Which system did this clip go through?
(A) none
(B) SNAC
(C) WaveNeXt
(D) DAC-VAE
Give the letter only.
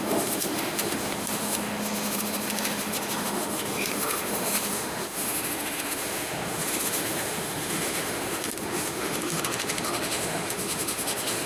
D